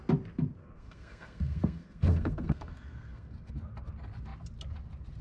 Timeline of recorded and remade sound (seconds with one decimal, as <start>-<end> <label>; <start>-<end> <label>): 0.0-0.6 recorded; 0.6-3.5 remade; 3.5-5.2 recorded